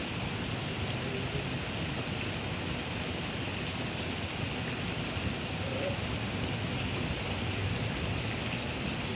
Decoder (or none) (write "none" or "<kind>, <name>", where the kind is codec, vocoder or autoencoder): none